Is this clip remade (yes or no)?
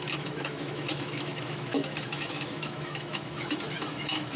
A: yes